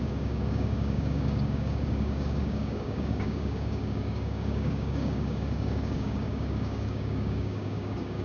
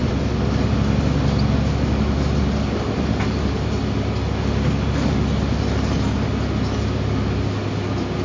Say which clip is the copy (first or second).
first